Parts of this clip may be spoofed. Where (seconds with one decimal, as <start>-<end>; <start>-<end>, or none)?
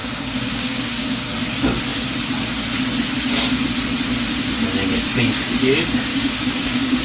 0.0-1.3; 6.1-7.0